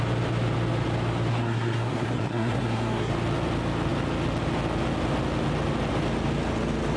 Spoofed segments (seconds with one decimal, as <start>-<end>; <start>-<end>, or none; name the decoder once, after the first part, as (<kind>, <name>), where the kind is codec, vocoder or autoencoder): 1.3-3.1 (codec, SNAC)